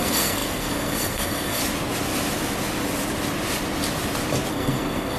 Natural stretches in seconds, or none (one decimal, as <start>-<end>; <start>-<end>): 1.6-4.5